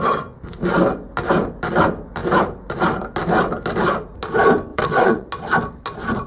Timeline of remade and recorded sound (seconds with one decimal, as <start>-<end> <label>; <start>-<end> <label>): 0.0-4.7 recorded; 4.7-5.3 remade; 5.3-6.3 recorded